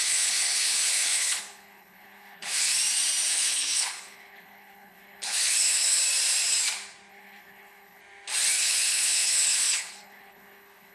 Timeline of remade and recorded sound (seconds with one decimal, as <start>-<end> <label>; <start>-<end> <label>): 0.0-2.7 remade; 2.7-3.3 recorded; 3.3-6.0 remade; 6.0-7.1 recorded; 7.1-8.0 remade; 8.0-8.5 recorded; 8.5-10.9 remade